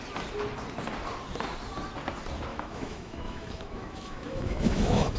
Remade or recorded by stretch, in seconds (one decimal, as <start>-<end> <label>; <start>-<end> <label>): 0.0-2.5 recorded; 2.5-5.2 remade